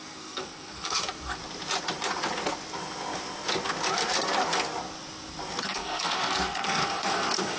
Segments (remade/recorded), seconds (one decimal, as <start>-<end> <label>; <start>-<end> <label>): 0.0-1.4 remade; 1.4-5.6 recorded; 5.6-7.6 remade